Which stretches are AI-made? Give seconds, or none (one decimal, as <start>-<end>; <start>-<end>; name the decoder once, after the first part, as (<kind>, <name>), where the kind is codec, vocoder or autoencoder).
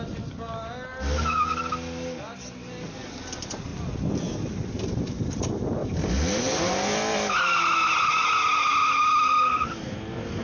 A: none